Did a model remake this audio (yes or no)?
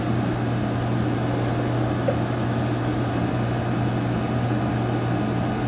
no